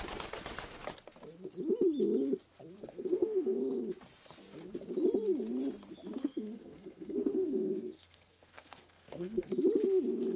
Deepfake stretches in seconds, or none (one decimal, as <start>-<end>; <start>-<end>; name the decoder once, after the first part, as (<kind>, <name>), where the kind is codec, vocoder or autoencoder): 2.8-3.6 (codec, SNAC); 6.2-9.5